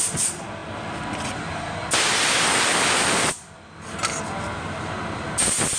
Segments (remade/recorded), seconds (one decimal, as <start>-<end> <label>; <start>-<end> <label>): 0.0-5.8 recorded